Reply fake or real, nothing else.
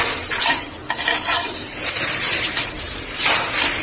real